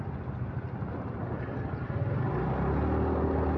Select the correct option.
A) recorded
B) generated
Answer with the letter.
A